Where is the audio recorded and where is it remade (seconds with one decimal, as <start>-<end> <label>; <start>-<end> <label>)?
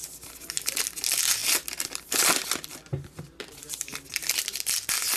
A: 0.0-1.4 recorded; 1.4-2.7 remade; 2.7-3.6 recorded; 3.6-4.1 remade; 4.1-5.2 recorded